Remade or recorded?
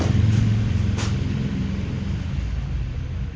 recorded